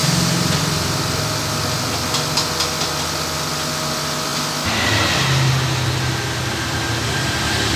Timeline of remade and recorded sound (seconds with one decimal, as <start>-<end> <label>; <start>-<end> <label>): 0.0-7.8 recorded